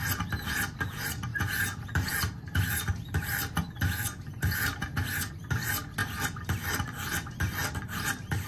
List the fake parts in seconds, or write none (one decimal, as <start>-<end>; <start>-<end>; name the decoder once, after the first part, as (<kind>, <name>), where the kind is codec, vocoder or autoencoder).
none